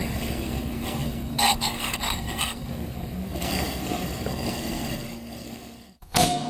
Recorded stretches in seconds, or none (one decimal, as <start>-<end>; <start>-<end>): none